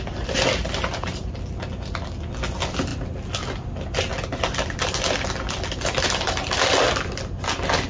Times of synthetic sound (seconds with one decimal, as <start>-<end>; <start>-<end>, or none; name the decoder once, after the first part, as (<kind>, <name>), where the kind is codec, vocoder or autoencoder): none